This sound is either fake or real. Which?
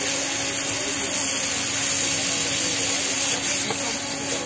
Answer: real